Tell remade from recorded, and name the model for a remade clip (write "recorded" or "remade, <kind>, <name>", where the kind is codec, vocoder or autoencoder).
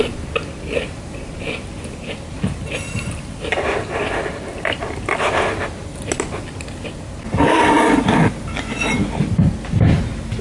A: recorded